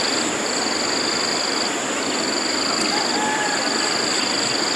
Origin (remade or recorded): recorded